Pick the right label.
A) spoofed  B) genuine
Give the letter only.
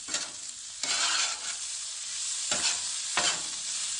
B